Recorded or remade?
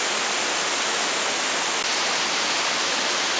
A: recorded